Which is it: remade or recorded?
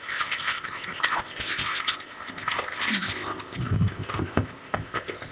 remade